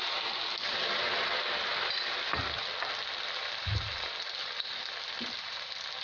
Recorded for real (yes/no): yes